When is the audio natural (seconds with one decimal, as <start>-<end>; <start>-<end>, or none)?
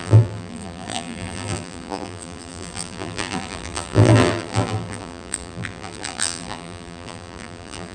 none